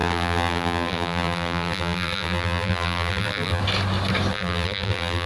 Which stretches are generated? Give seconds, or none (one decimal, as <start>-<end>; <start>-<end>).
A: 0.0-3.6; 4.3-5.3